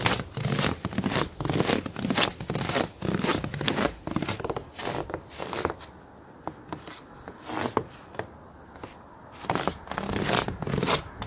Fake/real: real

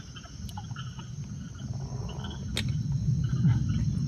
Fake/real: real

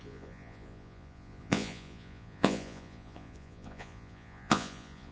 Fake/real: fake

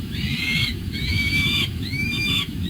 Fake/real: fake